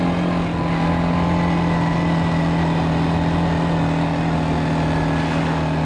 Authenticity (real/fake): real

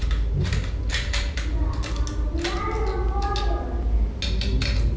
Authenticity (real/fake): real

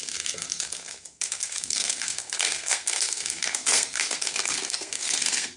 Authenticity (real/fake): fake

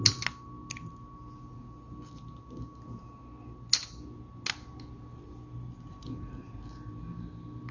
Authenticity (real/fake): real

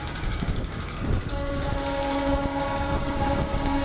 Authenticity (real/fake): fake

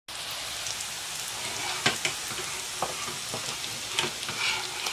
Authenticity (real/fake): real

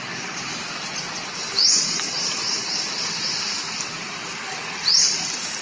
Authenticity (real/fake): real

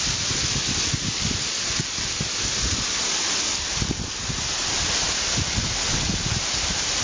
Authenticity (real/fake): real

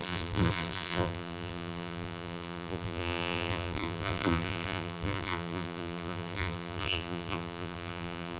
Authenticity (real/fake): fake